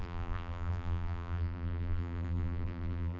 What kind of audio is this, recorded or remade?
remade